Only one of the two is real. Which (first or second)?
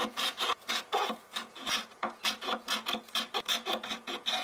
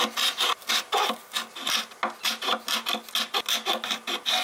second